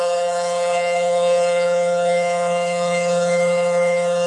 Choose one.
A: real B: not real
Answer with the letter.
B